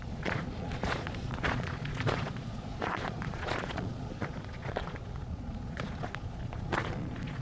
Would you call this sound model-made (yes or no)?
yes